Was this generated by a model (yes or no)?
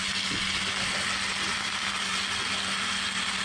no